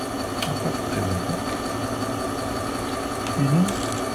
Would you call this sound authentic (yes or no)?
yes